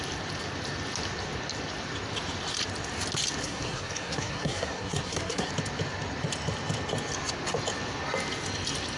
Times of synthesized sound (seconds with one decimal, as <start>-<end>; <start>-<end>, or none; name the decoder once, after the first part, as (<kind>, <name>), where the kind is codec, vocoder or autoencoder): 3.4-5.5 (codec, SNAC)